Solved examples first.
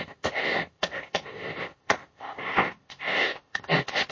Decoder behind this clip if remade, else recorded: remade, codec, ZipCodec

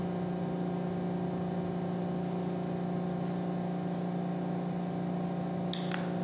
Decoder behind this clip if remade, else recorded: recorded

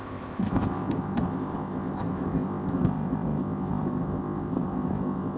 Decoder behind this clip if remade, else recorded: remade, codec, ZipCodec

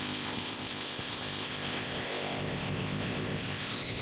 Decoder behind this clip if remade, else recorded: remade, codec, ZipCodec